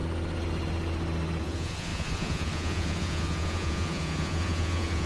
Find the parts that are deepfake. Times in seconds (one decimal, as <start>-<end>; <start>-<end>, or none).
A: 1.4-5.1